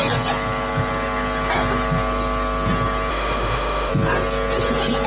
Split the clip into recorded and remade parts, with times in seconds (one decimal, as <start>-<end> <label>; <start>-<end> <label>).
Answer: 0.0-3.1 recorded; 3.1-3.9 remade; 3.9-5.1 recorded